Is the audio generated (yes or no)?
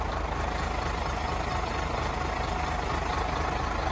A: no